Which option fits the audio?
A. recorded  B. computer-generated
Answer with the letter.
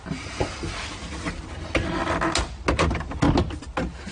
A